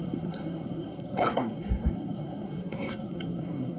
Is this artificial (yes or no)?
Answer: yes